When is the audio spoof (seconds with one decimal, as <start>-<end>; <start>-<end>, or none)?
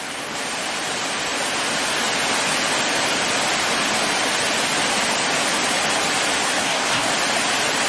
6.6-7.1